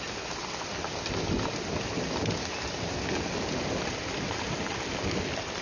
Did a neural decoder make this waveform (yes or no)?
no